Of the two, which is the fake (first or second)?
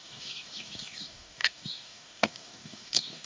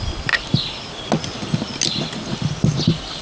first